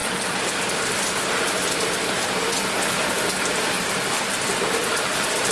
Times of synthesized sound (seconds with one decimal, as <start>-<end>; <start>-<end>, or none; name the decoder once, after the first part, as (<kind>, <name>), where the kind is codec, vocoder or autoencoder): 3.3-5.5 (vocoder, BigVGAN v2)